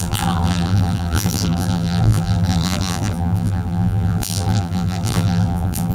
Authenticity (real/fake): fake